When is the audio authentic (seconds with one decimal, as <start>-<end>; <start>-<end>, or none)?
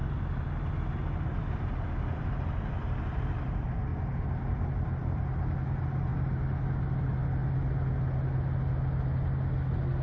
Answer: 0.0-10.0